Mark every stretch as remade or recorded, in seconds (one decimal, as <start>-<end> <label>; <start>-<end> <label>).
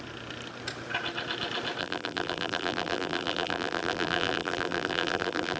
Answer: 0.0-1.8 recorded; 1.8-5.6 remade